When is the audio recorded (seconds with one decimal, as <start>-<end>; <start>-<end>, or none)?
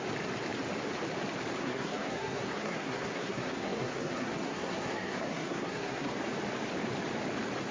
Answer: 0.0-1.6; 6.1-7.7